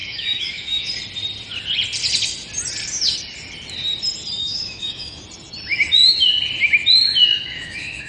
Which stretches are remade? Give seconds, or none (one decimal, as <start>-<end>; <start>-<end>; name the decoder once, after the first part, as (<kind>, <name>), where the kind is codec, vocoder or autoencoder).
0.0-0.9 (autoencoder, DAC-VAE); 4.4-5.2; 7.2-8.1